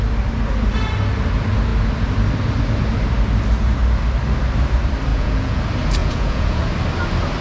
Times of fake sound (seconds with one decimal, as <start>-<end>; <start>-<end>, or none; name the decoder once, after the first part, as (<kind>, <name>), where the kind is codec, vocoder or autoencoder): 5.1-5.6 (vocoder, Vocos); 6.0-6.6